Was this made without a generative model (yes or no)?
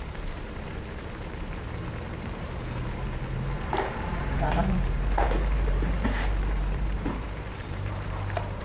no